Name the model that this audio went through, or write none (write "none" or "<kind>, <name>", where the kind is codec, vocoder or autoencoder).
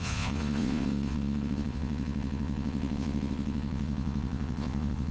vocoder, Vocos